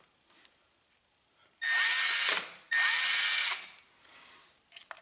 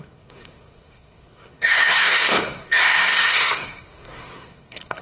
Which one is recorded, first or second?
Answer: first